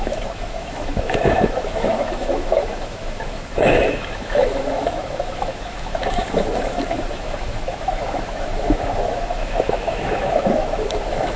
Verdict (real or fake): fake